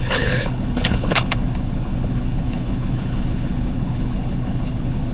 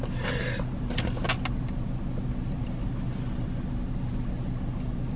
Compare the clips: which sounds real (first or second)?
second